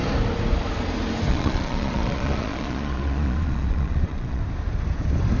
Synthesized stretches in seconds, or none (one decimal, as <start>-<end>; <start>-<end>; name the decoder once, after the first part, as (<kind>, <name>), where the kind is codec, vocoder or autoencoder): 1.3-4.4 (vocoder, Vocos)